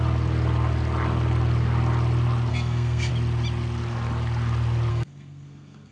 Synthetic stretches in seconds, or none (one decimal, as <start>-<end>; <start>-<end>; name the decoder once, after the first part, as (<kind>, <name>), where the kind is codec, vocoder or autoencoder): 2.5-3.1 (codec, SNAC); 4.9-5.9